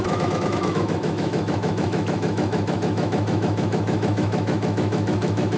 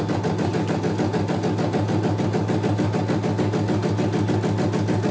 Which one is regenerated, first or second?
first